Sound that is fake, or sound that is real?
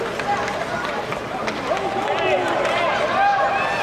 real